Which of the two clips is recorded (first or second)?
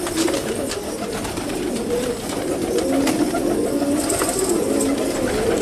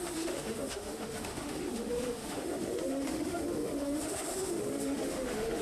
first